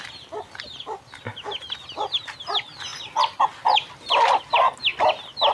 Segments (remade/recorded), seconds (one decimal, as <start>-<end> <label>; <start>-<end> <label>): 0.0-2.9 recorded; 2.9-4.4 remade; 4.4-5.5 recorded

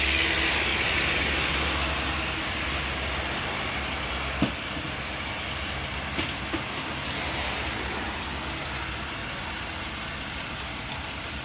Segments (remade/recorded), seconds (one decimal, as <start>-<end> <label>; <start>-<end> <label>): 0.0-9.2 recorded; 9.2-11.4 remade

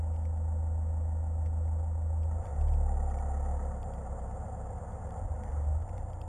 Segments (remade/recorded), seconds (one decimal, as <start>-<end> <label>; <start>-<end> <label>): 0.0-3.5 recorded; 3.5-5.2 remade; 5.2-6.3 recorded

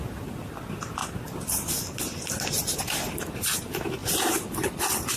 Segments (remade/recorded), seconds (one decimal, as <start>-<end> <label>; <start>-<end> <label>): 0.0-4.0 recorded; 4.0-5.2 remade